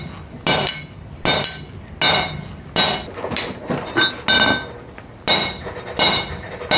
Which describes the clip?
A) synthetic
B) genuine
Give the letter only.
B